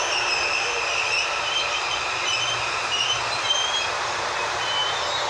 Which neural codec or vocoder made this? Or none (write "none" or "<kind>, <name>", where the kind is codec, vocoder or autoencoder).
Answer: vocoder, BigVGAN v2